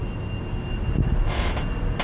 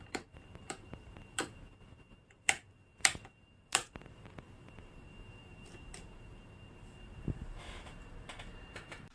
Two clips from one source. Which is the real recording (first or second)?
first